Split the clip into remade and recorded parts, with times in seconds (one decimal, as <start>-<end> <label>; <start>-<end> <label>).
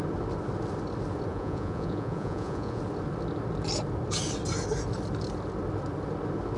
0.0-1.3 recorded; 1.3-2.8 remade; 2.8-6.6 recorded